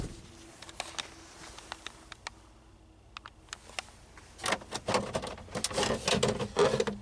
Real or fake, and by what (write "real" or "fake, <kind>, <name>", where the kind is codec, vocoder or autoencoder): real